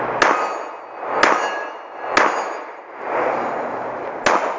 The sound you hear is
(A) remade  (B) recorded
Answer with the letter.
B